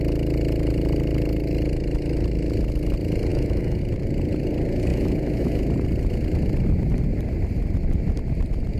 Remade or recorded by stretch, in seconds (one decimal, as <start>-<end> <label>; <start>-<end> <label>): 0.0-3.3 recorded; 3.3-3.8 remade; 3.8-4.9 recorded; 4.9-5.6 remade; 5.6-8.8 recorded